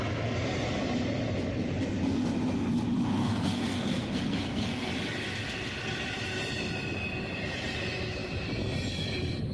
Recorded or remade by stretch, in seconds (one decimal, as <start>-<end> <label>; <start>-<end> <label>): 0.0-3.2 recorded; 3.2-4.9 remade; 4.9-9.5 recorded